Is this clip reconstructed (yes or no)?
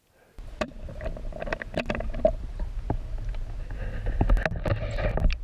no